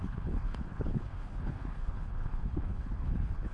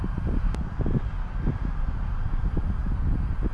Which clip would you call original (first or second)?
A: second